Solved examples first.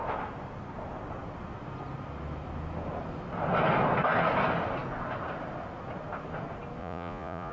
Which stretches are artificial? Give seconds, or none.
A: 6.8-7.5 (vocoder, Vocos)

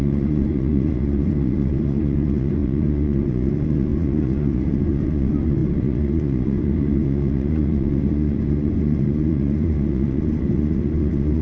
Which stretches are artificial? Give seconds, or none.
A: 0.0-11.4 (vocoder, Vocos)

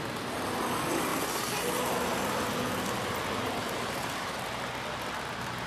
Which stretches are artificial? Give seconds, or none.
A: none